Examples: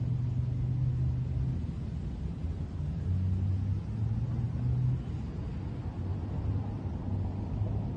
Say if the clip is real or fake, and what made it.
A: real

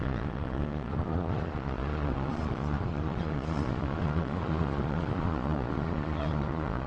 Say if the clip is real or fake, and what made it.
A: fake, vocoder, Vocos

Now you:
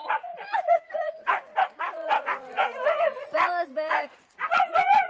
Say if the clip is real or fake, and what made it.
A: fake, vocoder, Vocos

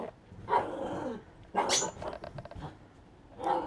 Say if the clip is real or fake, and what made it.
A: real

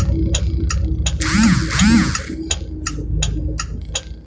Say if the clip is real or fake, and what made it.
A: real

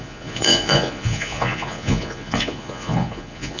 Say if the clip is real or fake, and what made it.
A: fake, vocoder, Vocos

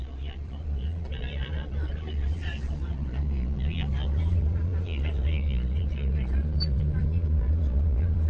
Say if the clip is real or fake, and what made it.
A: fake, vocoder, Vocos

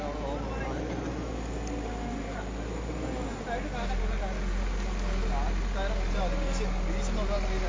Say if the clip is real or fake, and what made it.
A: real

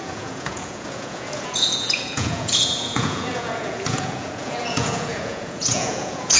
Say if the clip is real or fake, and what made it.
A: fake, vocoder, Vocos